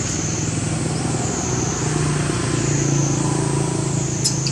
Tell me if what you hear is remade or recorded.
recorded